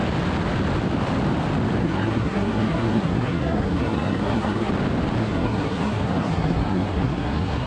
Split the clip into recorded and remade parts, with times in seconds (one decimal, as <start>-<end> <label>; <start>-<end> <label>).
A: 0.0-1.8 recorded; 1.8-4.7 remade; 4.7-5.2 recorded; 5.2-7.7 remade